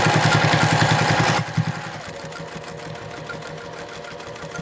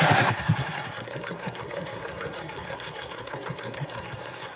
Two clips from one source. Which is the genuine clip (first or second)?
first